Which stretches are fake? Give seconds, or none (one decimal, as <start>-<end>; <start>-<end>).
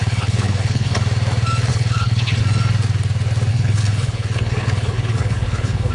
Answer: 0.0-1.0; 1.7-2.4; 3.5-5.9